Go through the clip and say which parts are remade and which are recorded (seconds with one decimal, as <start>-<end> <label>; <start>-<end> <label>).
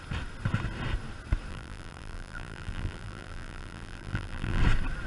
0.0-1.5 recorded; 1.5-4.6 remade; 4.6-5.1 recorded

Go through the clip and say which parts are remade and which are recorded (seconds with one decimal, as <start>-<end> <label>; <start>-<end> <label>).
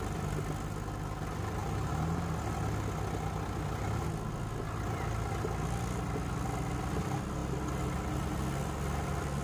0.0-9.4 recorded